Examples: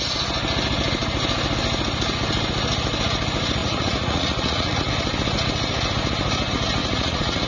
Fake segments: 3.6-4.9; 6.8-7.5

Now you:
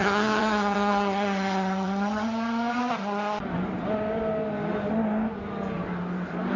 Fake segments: 0.0-2.8